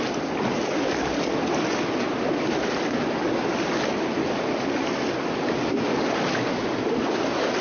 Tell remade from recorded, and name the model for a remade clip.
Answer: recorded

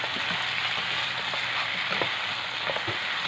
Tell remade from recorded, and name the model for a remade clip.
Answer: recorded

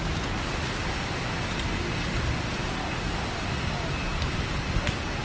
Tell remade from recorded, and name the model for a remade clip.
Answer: recorded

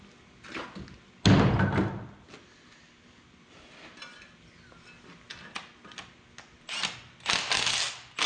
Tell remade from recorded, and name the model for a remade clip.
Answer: recorded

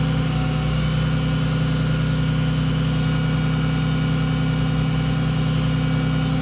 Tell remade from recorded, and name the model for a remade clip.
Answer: recorded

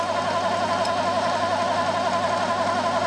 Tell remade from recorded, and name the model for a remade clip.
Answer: recorded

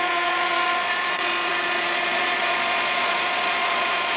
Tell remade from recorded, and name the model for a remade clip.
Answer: remade, vocoder, Vocos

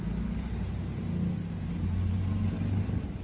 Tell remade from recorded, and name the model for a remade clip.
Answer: recorded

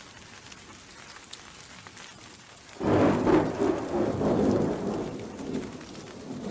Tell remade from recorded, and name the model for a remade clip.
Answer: recorded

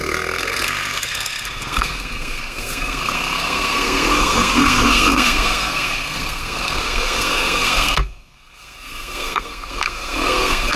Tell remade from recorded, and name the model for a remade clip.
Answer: remade, codec, SNAC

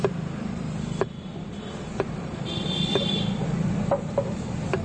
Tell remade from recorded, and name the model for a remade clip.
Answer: remade, vocoder, BigVGAN v2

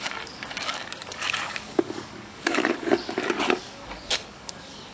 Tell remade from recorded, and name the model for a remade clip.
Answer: remade, codec, DAC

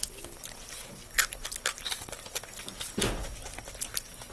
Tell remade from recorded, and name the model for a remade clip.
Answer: recorded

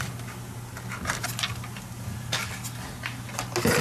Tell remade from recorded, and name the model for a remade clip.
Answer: recorded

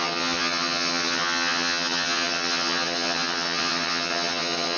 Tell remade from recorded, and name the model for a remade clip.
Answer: remade, vocoder, HiFi-GAN